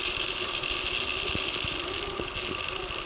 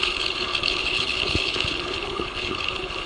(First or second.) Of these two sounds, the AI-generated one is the second